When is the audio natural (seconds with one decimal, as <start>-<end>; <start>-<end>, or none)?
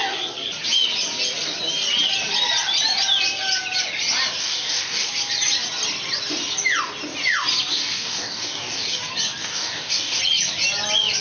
0.0-4.4; 5.1-7.7; 9.0-9.4; 10.2-11.2